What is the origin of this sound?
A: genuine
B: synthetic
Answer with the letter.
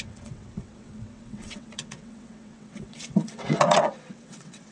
B